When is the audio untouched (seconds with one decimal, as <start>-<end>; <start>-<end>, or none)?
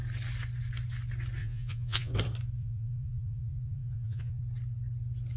0.0-1.4; 2.1-2.6; 4.4-5.4